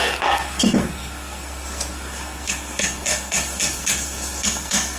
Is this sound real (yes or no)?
no